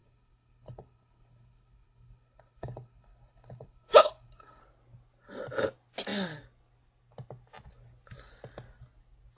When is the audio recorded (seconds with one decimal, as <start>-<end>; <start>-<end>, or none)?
4.6-9.4